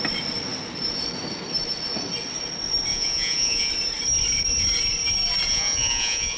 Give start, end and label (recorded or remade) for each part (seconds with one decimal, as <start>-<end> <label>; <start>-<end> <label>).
0.0-2.9 recorded; 2.9-3.7 remade; 3.7-5.5 recorded; 5.5-6.4 remade